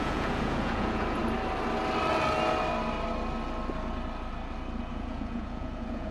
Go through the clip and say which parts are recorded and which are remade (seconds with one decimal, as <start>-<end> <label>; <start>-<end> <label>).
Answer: 0.0-1.2 remade; 1.2-4.9 recorded; 4.9-6.1 remade